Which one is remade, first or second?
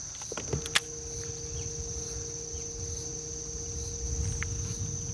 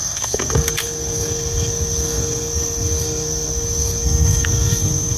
second